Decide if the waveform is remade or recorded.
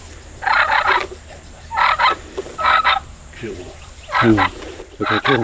remade